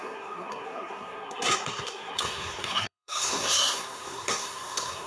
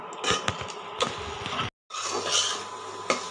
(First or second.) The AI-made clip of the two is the first